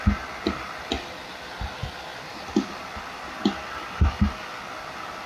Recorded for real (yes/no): yes